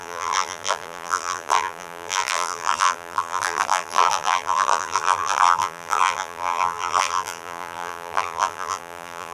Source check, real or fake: fake